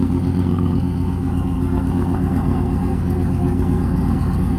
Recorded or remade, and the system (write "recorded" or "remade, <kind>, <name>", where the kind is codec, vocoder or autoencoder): remade, codec, SNAC